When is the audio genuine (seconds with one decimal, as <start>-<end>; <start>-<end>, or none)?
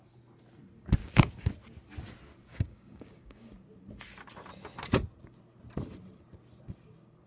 0.0-1.0; 1.5-2.5; 3.5-7.3